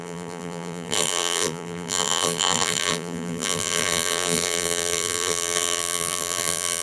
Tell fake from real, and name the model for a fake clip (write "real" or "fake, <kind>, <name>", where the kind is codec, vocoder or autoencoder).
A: fake, vocoder, BigVGAN v2